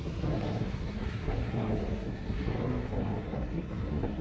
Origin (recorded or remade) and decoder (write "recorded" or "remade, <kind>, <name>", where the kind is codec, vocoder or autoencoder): remade, codec, SNAC